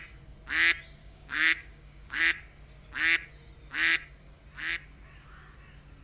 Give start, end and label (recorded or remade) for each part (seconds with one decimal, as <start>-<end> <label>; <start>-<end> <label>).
0.0-1.0 recorded; 1.0-2.2 remade; 2.2-6.0 recorded